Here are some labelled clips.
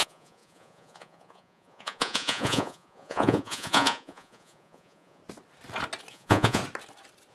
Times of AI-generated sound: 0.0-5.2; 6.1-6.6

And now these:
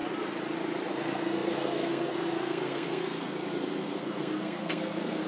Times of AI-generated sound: 0.9-5.3

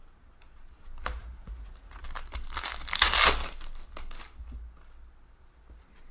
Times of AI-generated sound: 1.2-2.0

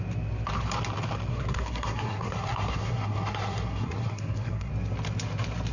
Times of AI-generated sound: 1.3-4.7

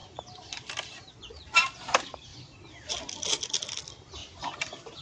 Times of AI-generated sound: 0.0-1.1; 2.3-3.0; 4.2-5.0

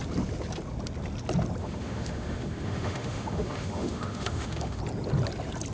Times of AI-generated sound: 1.6-4.8